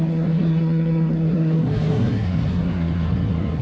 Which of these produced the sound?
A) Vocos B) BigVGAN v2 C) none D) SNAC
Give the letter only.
D